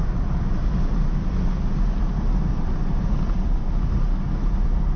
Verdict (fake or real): real